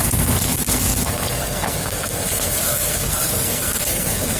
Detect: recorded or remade remade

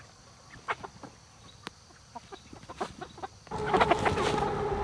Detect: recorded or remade recorded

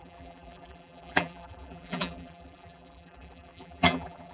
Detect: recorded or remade remade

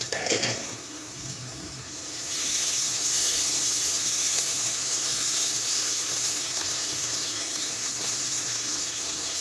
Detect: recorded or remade remade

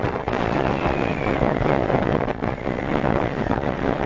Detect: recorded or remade remade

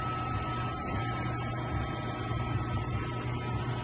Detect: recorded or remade recorded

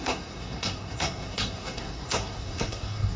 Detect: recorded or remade remade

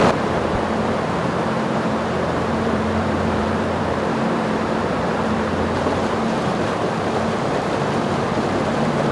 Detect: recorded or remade remade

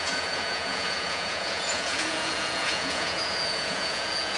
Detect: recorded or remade remade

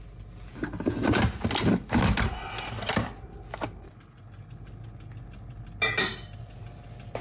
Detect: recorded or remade recorded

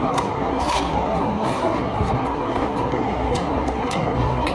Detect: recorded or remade remade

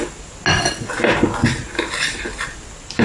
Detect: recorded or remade recorded